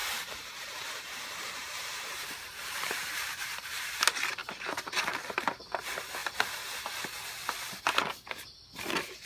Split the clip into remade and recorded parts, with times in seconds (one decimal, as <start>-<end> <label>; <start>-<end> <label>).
0.0-4.0 remade; 4.0-4.4 recorded; 4.4-5.6 remade; 5.6-9.3 recorded